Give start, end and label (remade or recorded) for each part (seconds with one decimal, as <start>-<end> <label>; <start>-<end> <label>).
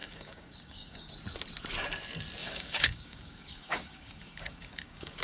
0.0-1.1 remade; 1.1-2.4 recorded; 2.4-5.2 remade